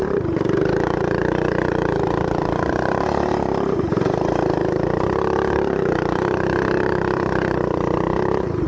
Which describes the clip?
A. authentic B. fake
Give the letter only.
B